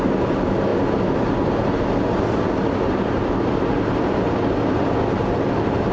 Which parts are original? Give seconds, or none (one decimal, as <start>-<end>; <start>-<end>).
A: 0.0-5.9